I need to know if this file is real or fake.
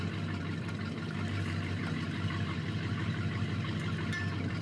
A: fake